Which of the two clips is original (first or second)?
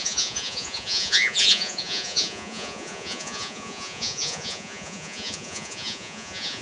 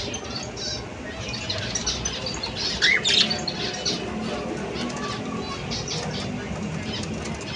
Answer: second